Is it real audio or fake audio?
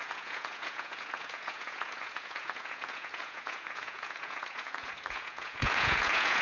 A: fake